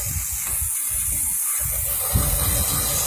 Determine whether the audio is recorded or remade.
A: recorded